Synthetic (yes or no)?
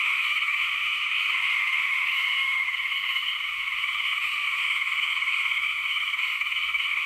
yes